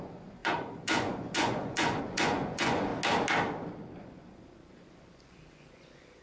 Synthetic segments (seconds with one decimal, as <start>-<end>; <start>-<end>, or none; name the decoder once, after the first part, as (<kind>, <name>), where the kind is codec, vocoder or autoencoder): 0.0-2.9 (vocoder, Vocos); 4.0-6.2